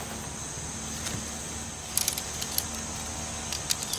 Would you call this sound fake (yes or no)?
no